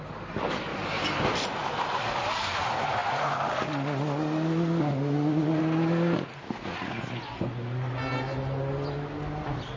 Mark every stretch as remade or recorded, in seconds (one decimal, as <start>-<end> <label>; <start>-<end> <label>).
0.0-0.7 recorded; 0.7-1.2 remade; 1.2-9.8 recorded